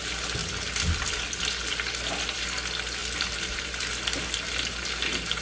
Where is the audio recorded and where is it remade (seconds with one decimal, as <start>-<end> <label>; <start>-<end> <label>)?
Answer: 0.0-3.0 recorded; 3.0-3.8 remade; 3.8-5.4 recorded